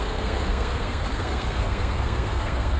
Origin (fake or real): fake